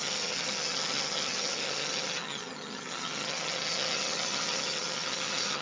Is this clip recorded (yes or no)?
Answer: no